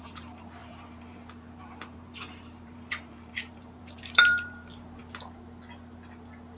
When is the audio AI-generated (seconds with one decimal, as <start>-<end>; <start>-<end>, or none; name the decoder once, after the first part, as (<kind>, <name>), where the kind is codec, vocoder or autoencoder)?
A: 0.0-5.0 (vocoder, BigVGAN v2)

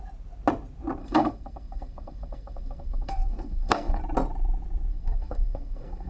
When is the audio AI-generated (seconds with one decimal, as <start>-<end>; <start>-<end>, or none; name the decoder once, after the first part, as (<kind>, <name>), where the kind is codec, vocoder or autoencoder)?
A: 1.0-4.0 (codec, SNAC); 4.9-6.1

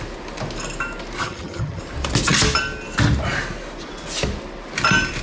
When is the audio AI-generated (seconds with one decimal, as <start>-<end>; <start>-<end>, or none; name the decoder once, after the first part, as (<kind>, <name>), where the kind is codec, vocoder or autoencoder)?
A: 1.2-1.8 (vocoder, HiFi-GAN)

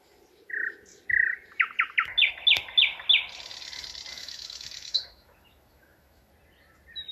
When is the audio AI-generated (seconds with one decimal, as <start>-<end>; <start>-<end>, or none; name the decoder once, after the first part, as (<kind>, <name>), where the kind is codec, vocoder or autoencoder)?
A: 4.1-6.3 (autoencoder, DAC-VAE)

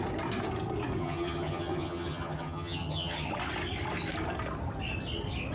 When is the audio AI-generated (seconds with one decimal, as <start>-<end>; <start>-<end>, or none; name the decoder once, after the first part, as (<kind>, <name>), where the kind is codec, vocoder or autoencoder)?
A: 1.0-3.3 (vocoder, HiFi-GAN)

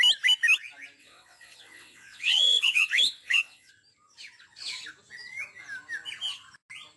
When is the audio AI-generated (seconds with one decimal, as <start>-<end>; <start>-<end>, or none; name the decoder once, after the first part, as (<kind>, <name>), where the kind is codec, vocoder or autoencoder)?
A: 1.0-3.7 (vocoder, WaveNeXt)

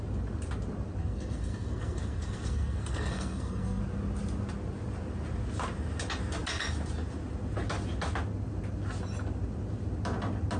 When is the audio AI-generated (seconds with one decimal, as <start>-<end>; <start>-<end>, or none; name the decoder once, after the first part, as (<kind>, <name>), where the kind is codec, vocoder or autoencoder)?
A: 1.0-3.8 (codec, SNAC)